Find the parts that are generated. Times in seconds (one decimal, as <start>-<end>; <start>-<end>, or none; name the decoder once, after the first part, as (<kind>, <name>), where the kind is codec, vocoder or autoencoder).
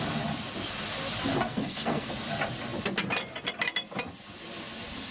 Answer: 1.3-2.1 (codec, SNAC)